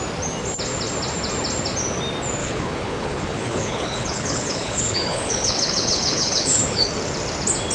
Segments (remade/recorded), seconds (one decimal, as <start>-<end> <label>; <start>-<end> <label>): 0.0-2.4 recorded; 2.4-6.9 remade; 6.9-7.7 recorded